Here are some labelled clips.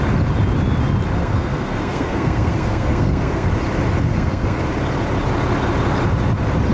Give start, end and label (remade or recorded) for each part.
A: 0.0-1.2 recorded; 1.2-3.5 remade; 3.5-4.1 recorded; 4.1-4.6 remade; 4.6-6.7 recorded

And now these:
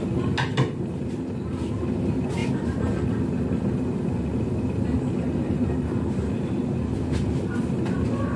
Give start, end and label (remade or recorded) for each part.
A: 0.0-8.4 recorded